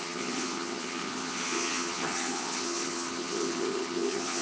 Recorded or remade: remade